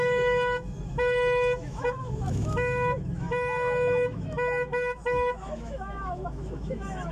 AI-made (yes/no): yes